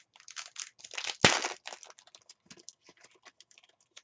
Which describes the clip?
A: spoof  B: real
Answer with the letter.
B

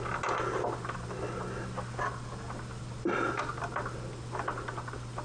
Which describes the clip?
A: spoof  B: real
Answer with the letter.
B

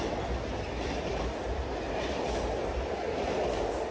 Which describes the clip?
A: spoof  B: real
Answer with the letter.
B